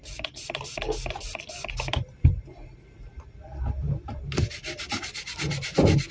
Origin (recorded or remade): recorded